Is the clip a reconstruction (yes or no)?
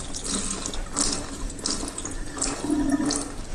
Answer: no